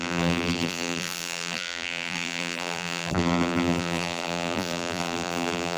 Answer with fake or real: fake